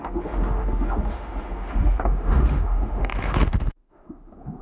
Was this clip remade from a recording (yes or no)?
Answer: yes